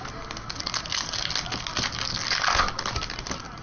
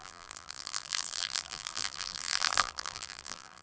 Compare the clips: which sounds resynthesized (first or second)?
second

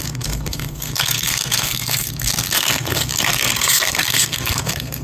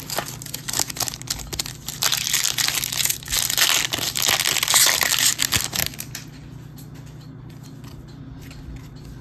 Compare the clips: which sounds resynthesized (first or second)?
first